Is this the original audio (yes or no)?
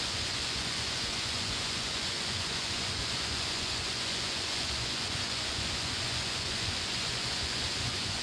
no